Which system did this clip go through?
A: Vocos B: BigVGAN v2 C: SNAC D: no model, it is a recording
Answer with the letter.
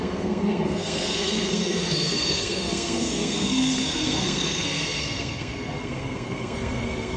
C